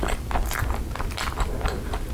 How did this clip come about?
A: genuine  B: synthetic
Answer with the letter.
B